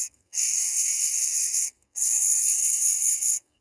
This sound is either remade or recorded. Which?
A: remade